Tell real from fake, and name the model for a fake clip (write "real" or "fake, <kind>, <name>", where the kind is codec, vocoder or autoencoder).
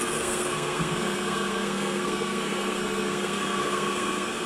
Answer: fake, codec, SNAC